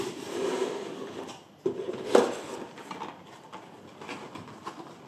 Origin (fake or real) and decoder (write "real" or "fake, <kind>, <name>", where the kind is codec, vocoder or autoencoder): real